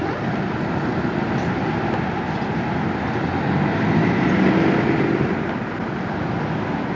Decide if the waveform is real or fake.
real